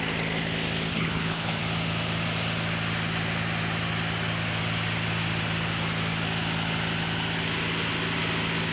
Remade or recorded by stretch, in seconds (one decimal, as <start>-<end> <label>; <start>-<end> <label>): 0.0-0.9 recorded; 0.9-1.6 remade; 1.6-8.7 recorded